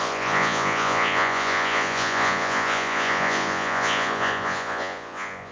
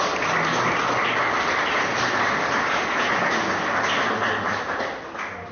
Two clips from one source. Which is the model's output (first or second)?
first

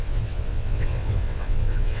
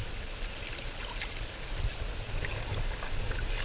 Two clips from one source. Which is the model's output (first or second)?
first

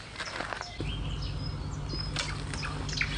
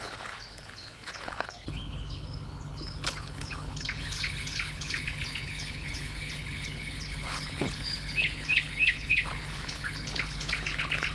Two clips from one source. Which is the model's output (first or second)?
second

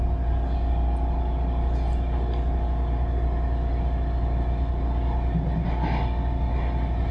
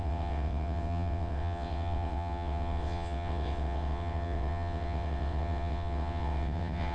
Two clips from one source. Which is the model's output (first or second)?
second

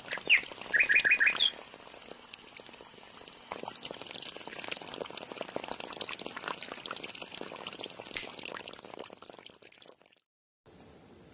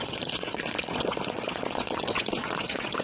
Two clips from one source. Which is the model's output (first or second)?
second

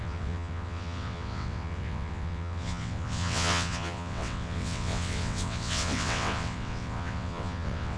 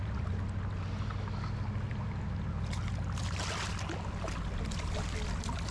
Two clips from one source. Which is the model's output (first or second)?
first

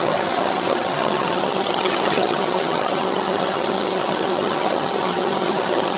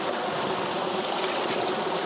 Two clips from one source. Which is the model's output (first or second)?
first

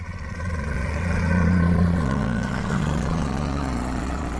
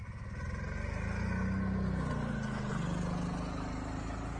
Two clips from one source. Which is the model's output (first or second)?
first